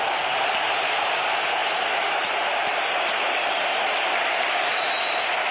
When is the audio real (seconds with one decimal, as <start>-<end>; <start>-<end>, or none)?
0.0-5.5